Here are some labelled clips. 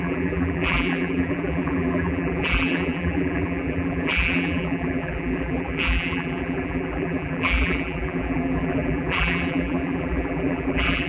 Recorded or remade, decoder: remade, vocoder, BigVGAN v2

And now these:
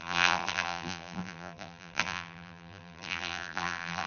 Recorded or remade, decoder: remade, vocoder, BigVGAN v2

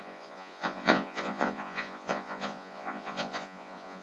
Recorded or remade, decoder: remade, vocoder, Vocos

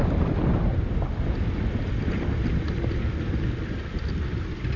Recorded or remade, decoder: recorded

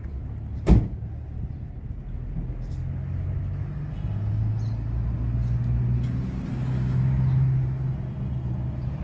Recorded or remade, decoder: recorded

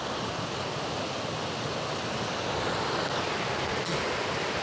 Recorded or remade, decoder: recorded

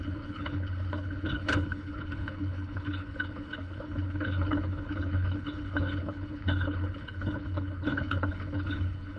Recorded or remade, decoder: remade, codec, HILCodec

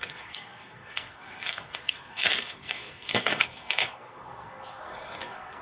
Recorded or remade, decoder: remade, codec, SNAC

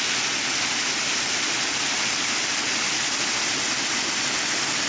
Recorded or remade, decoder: recorded